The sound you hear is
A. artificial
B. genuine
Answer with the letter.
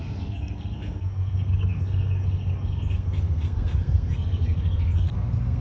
A